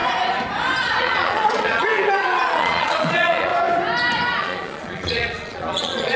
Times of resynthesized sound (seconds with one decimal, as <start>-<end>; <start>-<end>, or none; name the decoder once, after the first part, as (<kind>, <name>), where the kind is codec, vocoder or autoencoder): 1.0-3.5 (vocoder, Vocos); 4.4-6.2